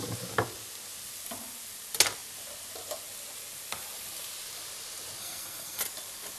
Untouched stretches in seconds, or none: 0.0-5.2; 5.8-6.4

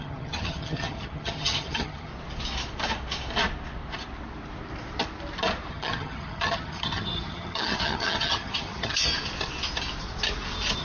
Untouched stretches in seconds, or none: 2.1-5.7; 9.1-10.8

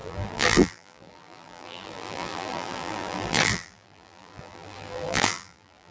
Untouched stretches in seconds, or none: none

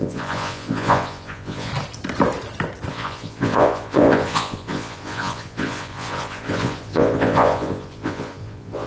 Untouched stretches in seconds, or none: 1.7-2.9